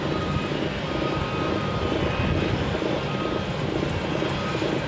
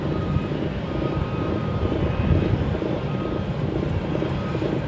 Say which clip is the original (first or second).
first